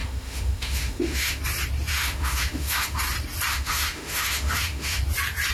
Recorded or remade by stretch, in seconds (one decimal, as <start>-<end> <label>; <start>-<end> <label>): 0.0-1.4 remade; 1.4-1.9 recorded; 1.9-3.0 remade; 3.0-3.5 recorded; 3.5-5.0 remade; 5.0-5.5 recorded